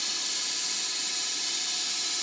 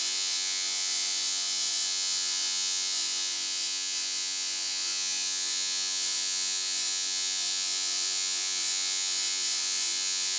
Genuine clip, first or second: first